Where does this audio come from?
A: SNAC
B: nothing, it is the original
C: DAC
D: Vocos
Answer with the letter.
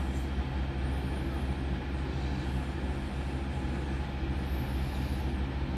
B